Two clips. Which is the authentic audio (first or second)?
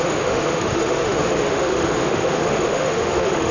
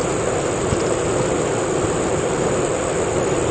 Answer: second